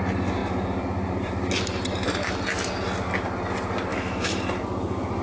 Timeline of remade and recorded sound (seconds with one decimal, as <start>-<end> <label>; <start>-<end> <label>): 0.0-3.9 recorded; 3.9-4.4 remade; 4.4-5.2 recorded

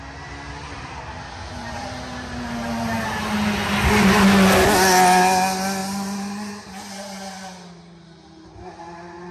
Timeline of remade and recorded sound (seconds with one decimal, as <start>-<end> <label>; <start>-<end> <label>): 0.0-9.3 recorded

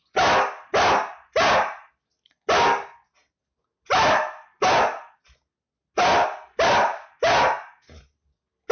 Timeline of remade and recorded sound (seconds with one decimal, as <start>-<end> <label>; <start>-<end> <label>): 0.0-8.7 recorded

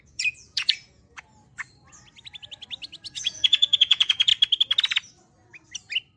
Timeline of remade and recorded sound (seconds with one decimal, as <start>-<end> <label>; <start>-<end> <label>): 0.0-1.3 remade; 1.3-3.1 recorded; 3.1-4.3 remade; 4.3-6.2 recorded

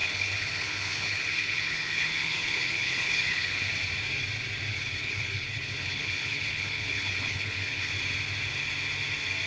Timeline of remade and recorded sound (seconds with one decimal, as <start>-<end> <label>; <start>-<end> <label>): 0.0-3.7 remade; 3.7-4.7 recorded; 4.7-7.9 remade; 7.9-9.5 recorded

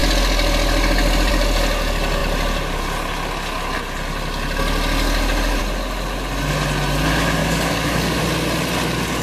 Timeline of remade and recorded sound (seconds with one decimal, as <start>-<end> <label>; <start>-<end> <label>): 0.0-7.4 recorded; 7.4-8.2 remade; 8.2-9.2 recorded

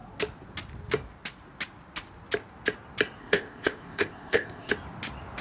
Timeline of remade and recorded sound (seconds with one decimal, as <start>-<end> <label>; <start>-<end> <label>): 0.0-3.2 recorded; 3.2-4.7 remade; 4.7-5.4 recorded

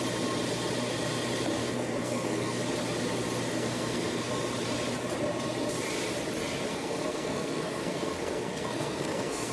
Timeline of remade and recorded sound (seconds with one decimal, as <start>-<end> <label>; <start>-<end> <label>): 0.0-1.6 recorded; 1.6-2.6 remade; 2.6-3.5 recorded; 3.5-4.3 remade; 4.3-6.7 recorded; 6.7-9.5 remade